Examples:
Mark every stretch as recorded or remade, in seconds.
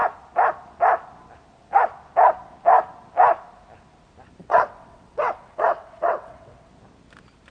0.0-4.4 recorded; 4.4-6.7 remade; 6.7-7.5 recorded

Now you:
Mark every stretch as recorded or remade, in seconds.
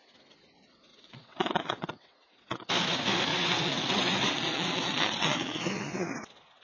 0.0-0.9 recorded; 0.9-2.6 remade; 2.6-3.3 recorded; 3.3-6.1 remade; 6.1-6.6 recorded